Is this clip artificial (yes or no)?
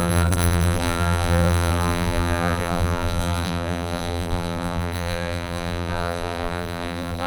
yes